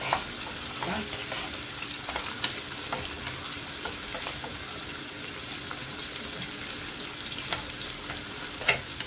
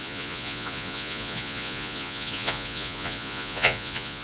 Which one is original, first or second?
first